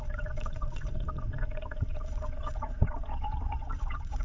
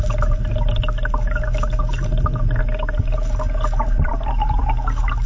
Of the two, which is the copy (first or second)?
first